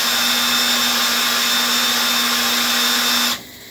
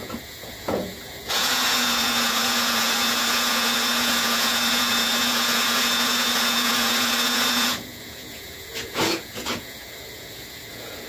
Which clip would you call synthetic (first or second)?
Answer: second